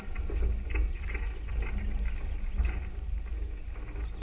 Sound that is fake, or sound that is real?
real